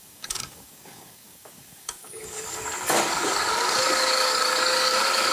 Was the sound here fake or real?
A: fake